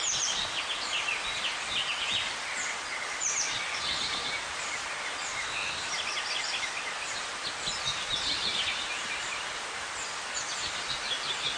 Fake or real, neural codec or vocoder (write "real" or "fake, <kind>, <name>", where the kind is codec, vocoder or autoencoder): real